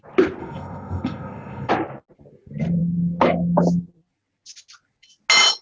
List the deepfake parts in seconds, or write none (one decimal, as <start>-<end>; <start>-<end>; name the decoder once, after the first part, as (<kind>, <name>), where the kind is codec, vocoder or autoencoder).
0.4-1.7 (codec, SNAC)